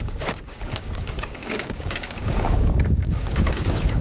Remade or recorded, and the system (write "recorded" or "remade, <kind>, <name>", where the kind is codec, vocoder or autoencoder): remade, codec, DAC